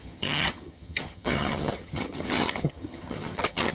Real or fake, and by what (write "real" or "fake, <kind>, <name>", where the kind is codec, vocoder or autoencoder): fake, vocoder, HiFi-GAN